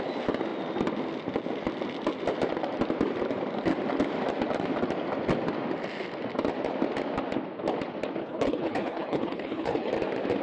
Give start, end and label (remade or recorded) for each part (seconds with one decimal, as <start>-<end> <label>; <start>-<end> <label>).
0.0-8.2 recorded; 8.2-9.9 remade; 9.9-10.4 recorded